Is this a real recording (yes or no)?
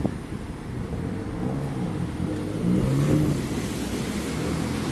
yes